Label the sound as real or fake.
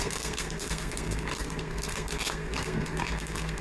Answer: fake